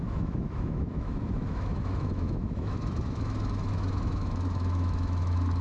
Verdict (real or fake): fake